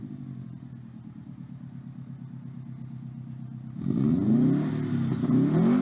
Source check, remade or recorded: recorded